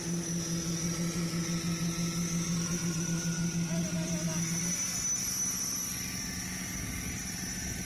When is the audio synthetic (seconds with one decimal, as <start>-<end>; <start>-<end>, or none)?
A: none

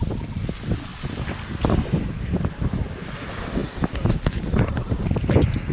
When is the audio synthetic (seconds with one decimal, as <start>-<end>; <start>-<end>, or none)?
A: none

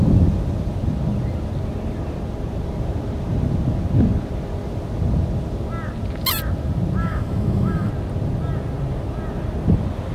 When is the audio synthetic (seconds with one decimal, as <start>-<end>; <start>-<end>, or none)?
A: 7.0-7.9

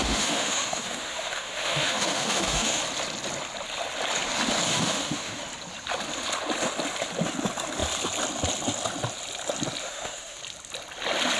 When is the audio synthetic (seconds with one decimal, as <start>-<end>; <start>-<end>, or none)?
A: 0.0-2.8; 4.7-5.4; 9.8-10.4

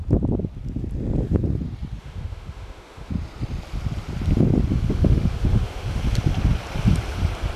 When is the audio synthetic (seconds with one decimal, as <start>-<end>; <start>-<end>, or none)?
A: 2.0-3.1; 4.7-6.0